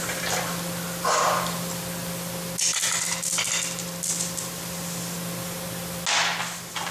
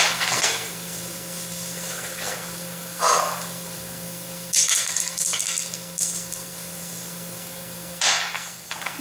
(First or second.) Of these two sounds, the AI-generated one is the second